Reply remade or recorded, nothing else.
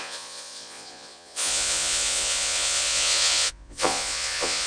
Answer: remade